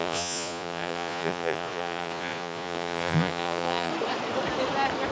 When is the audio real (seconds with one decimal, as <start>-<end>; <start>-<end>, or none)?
3.9-5.1